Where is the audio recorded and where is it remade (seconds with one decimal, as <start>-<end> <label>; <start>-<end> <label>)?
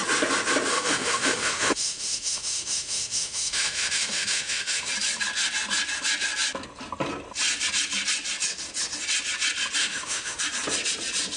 0.0-0.7 recorded; 0.7-4.9 remade; 4.9-9.8 recorded; 9.8-10.4 remade; 10.4-11.4 recorded